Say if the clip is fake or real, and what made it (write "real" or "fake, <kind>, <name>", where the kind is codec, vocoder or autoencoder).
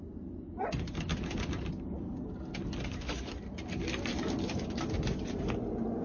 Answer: real